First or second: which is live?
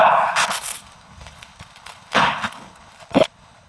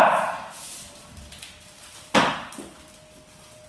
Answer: second